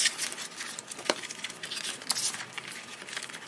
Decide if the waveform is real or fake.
real